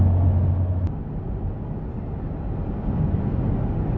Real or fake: real